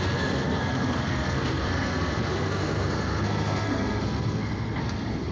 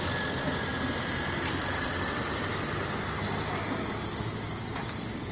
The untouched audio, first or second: second